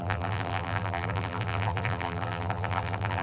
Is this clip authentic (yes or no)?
no